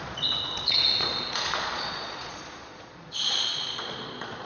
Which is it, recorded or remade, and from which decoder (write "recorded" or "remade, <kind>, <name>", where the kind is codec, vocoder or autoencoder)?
remade, vocoder, Vocos